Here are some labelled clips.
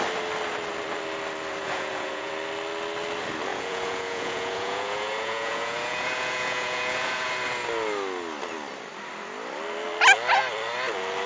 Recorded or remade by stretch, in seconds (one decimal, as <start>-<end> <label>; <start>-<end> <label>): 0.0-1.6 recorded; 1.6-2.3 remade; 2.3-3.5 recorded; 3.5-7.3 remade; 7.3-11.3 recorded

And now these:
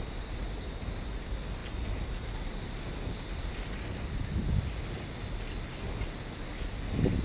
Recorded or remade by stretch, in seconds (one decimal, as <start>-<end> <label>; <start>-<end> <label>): 0.0-7.2 recorded

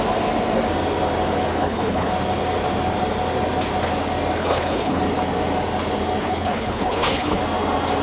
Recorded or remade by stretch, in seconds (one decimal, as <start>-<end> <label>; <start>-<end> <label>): 0.0-1.5 recorded; 1.5-2.1 remade; 2.1-4.4 recorded; 4.4-5.0 remade; 5.0-6.2 recorded; 6.2-7.4 remade; 7.4-8.0 recorded